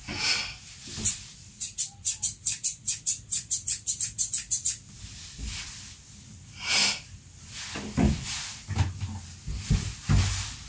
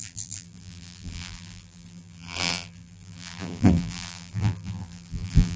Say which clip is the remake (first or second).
second